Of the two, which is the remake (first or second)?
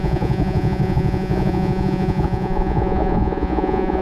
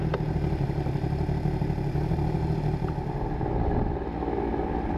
first